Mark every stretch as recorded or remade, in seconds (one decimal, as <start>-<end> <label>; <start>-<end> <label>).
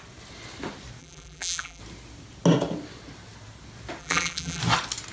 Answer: 0.0-1.0 recorded; 1.0-1.8 remade; 1.8-4.0 recorded; 4.0-4.6 remade; 4.6-5.1 recorded